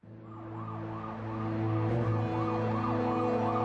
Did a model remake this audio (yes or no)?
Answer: no